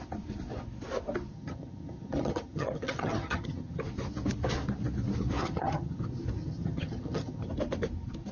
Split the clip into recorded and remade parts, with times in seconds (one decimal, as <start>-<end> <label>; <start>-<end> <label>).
0.0-1.3 recorded; 1.3-3.8 remade; 3.8-5.4 recorded; 5.4-6.0 remade; 6.0-6.4 recorded; 6.4-7.5 remade; 7.5-8.3 recorded